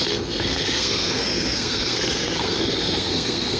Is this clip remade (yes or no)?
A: yes